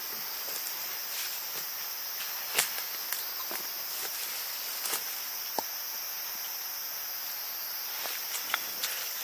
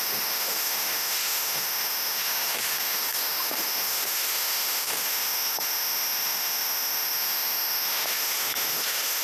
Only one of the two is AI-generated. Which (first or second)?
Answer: second